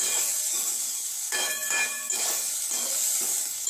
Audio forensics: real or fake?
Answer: fake